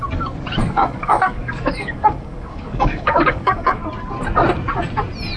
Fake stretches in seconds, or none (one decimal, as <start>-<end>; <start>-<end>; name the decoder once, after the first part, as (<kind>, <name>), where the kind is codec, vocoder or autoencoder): 0.6-3.8 (codec, DAC)

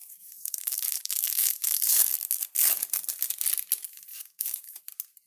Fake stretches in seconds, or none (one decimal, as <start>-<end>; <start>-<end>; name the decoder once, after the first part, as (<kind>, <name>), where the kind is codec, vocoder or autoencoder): 0.0-2.1 (codec, DAC); 4.1-4.8